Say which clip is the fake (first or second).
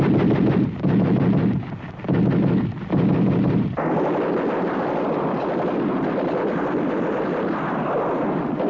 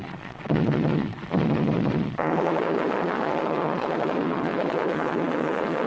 second